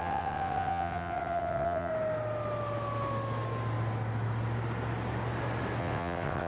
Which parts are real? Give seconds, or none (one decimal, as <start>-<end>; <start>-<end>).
1.9-5.8